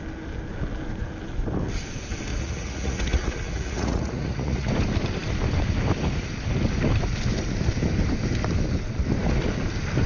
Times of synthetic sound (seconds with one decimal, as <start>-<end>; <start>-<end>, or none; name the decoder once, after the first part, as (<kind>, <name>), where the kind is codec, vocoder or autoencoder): 2.3-4.7 (vocoder, Vocos)